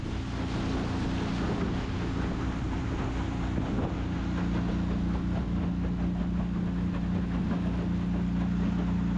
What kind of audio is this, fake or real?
real